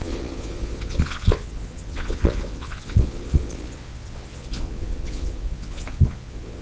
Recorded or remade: remade